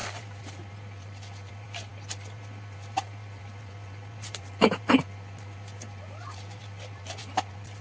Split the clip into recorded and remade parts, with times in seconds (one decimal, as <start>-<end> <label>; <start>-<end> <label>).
0.0-7.8 remade